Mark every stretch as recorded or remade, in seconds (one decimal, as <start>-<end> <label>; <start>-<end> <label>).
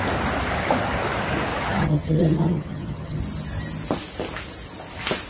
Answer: 0.0-1.5 recorded; 1.5-3.2 remade; 3.2-5.3 recorded